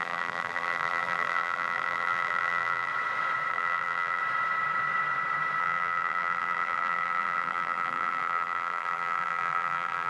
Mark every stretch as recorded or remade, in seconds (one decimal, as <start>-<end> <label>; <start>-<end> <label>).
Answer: 0.0-2.9 remade; 2.9-3.5 recorded; 3.5-4.2 remade; 4.2-5.6 recorded; 5.6-10.1 remade